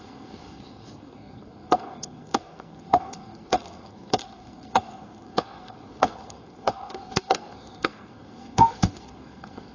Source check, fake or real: fake